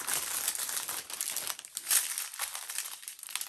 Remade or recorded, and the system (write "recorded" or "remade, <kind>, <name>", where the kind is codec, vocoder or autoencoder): recorded